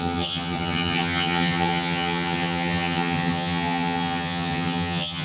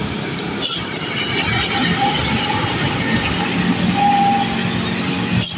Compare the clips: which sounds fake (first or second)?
first